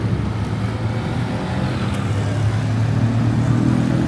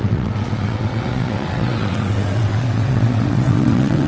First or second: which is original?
first